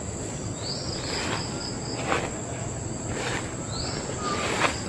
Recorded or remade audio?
recorded